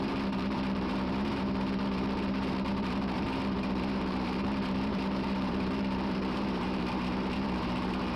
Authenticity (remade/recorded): remade